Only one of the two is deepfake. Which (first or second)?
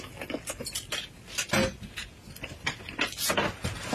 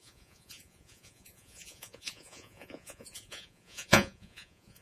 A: second